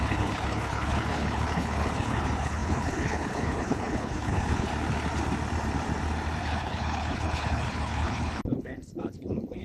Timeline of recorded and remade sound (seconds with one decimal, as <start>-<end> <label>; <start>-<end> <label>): 0.0-4.7 remade; 4.7-6.4 recorded; 6.4-9.6 remade